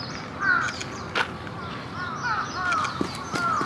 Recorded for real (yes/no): yes